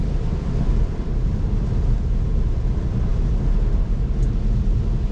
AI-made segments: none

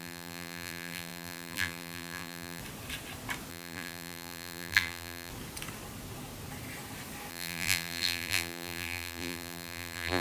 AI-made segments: 0.0-2.6; 3.5-5.3; 7.3-10.2

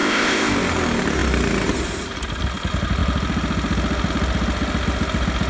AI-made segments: 0.0-0.5